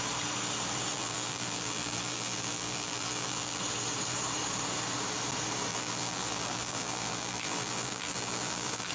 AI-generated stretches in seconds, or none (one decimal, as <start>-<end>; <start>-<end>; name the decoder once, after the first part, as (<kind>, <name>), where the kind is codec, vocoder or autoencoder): 0.9-3.6 (vocoder, BigVGAN v2); 5.7-8.9